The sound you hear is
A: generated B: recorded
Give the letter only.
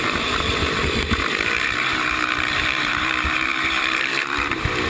A